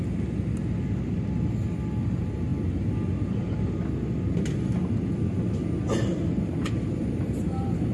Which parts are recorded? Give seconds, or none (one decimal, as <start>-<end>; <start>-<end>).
0.0-7.9